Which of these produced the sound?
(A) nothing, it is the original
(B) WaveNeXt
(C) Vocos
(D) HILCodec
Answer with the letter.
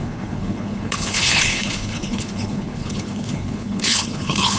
D